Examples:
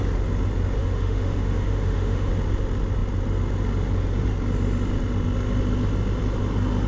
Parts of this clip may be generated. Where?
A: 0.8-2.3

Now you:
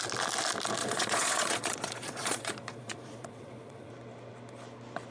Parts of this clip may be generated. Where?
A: 0.8-3.9

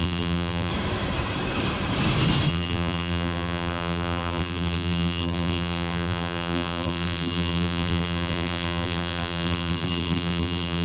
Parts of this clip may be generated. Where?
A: 0.0-0.7; 2.5-10.8

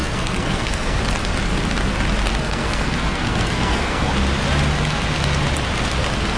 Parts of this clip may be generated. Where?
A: 0.0-1.0; 2.3-4.1

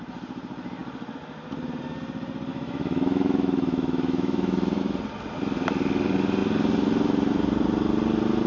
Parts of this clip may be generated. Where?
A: 2.5-4.8

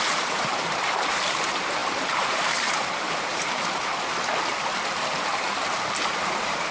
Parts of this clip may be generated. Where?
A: 0.0-3.9; 5.3-6.7

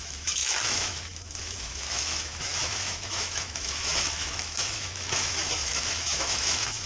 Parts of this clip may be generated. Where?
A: 0.0-6.9

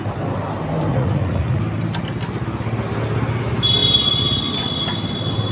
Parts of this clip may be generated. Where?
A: 0.9-1.6